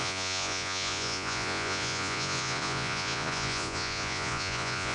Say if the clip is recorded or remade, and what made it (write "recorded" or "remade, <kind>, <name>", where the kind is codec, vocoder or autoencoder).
remade, vocoder, Vocos